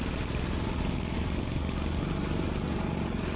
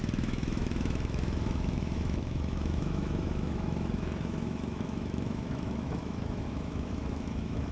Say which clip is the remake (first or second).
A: second